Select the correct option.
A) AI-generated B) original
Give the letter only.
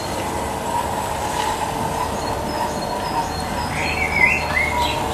B